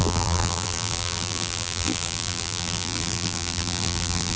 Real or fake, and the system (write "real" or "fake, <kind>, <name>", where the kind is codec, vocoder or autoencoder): fake, vocoder, BigVGAN v2